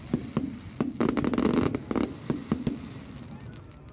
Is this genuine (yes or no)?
yes